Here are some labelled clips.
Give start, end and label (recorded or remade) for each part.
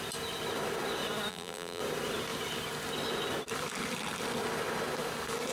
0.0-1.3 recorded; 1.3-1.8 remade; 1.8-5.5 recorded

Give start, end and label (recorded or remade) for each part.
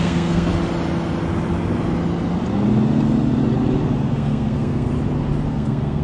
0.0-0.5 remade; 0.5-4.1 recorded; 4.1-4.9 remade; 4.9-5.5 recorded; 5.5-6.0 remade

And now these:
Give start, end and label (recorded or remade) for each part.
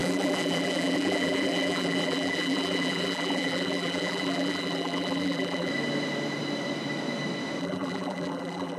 0.0-5.7 remade; 5.7-7.6 recorded; 7.6-8.8 remade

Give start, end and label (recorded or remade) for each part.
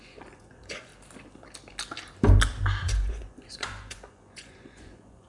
0.0-0.9 remade; 0.9-2.8 recorded; 2.8-5.3 remade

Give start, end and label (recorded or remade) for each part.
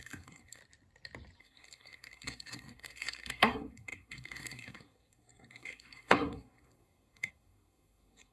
0.0-0.6 remade; 0.6-1.4 recorded; 1.4-8.3 remade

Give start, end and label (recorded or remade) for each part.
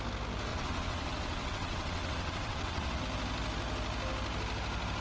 0.0-0.5 recorded; 0.5-3.0 remade; 3.0-5.0 recorded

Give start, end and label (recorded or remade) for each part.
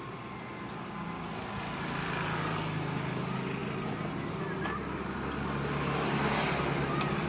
0.0-7.3 recorded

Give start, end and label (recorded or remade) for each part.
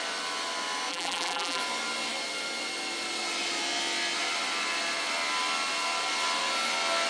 0.0-0.9 recorded; 0.9-1.6 remade; 1.6-7.1 recorded